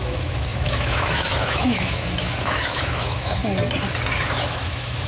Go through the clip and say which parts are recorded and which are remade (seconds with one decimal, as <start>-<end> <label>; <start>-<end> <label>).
0.0-3.4 remade; 3.4-4.2 recorded; 4.2-5.1 remade